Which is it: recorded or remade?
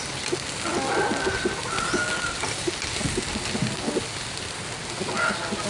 recorded